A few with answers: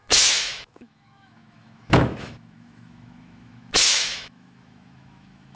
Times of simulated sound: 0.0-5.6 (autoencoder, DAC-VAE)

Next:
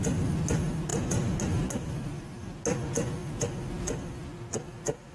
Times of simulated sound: none

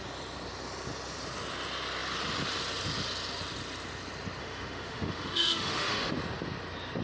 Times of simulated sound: 4.4-6.1 (autoencoder, DAC-VAE)

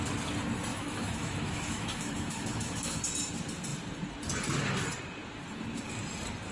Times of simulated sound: 0.7-3.0 (autoencoder, DAC-VAE)

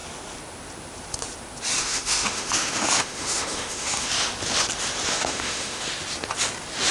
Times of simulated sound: 1.8-4.1 (autoencoder, DAC-VAE); 5.1-5.8

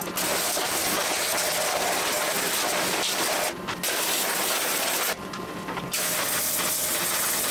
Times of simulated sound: none